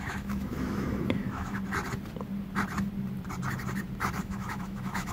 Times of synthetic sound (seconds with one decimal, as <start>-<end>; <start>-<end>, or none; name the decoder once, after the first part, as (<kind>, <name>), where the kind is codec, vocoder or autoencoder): 0.0-1.6 (autoencoder, DAC-VAE); 4.2-5.1